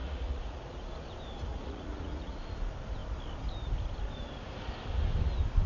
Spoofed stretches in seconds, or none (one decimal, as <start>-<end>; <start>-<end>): 0.0-0.9; 1.5-2.4